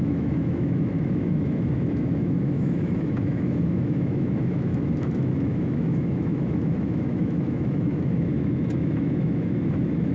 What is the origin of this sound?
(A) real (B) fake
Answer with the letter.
B